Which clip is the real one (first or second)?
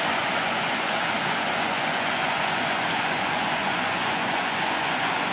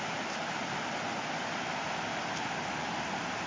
second